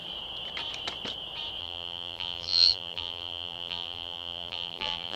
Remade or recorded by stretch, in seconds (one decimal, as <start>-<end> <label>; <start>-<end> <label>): 0.0-1.6 recorded; 1.6-5.2 remade